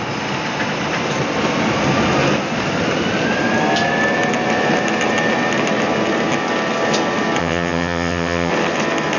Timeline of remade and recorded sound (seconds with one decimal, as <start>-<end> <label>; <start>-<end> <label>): 0.0-7.4 recorded; 7.4-8.5 remade; 8.5-9.2 recorded